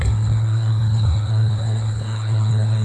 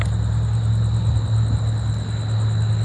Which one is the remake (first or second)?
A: first